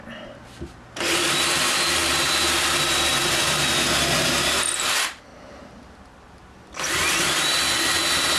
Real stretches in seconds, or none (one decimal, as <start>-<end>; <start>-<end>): 0.0-8.4